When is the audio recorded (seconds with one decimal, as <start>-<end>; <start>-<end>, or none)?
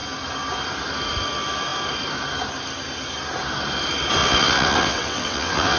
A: 0.0-4.2